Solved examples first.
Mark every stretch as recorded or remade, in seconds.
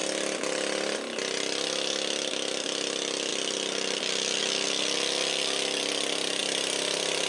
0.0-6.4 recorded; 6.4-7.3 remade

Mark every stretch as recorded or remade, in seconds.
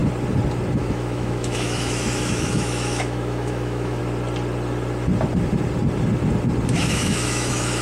0.0-0.8 recorded; 0.8-4.0 remade; 4.0-6.7 recorded; 6.7-7.8 remade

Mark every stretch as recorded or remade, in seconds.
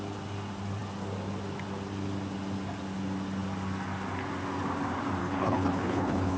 0.0-5.2 recorded; 5.2-6.4 remade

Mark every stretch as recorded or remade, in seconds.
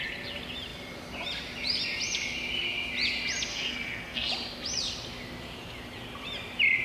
0.0-3.5 recorded; 3.5-4.3 remade; 4.3-6.8 recorded